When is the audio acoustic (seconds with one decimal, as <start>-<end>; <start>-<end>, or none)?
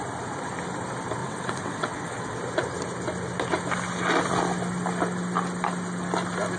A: 0.0-1.2; 2.4-6.6